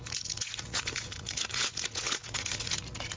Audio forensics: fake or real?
fake